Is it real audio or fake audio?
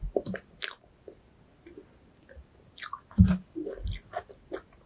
real